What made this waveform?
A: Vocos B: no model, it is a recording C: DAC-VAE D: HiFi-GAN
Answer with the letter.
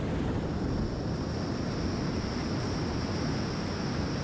B